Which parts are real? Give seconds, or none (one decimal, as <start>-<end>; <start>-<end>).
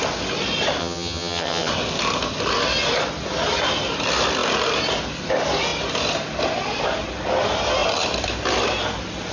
0.0-0.8; 1.7-9.3